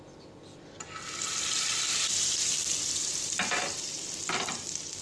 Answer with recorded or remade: remade